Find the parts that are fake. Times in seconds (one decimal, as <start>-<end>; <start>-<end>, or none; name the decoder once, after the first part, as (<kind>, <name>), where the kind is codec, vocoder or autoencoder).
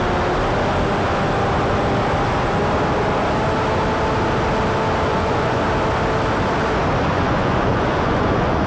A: 5.1-5.6 (vocoder, Vocos); 7.1-8.7